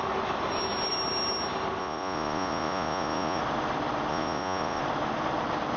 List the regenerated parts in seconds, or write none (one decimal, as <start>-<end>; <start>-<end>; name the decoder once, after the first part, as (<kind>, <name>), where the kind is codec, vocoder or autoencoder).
1.8-3.4 (vocoder, Vocos); 4.1-4.8